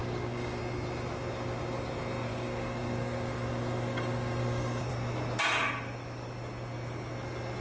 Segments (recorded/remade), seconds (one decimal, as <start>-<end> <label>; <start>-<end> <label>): 0.0-0.6 remade; 0.6-2.3 recorded; 2.3-4.9 remade; 4.9-7.6 recorded